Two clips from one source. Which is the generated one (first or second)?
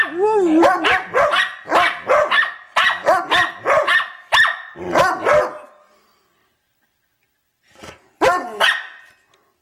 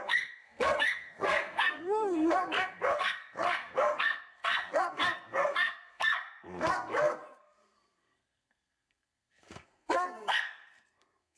second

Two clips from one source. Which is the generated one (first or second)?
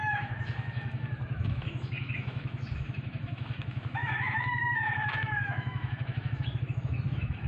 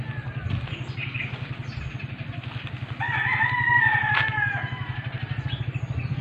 first